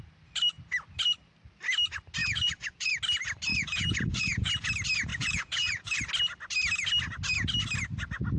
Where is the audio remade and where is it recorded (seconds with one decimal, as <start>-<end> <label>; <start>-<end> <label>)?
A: 0.0-2.2 recorded; 2.2-2.9 remade; 2.9-3.5 recorded; 3.5-4.5 remade; 4.5-5.1 recorded; 5.1-6.1 remade; 6.1-8.4 recorded